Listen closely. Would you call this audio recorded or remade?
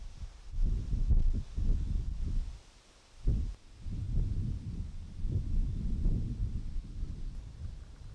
recorded